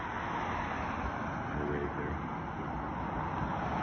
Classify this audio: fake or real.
real